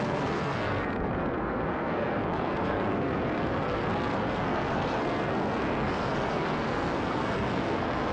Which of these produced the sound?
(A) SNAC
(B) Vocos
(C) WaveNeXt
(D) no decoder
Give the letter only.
A